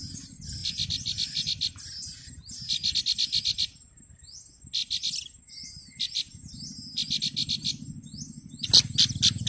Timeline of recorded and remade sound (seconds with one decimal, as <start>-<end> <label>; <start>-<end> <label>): 0.0-9.5 recorded